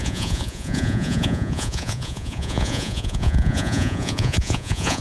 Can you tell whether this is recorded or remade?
remade